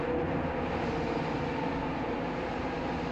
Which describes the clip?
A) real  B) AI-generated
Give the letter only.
A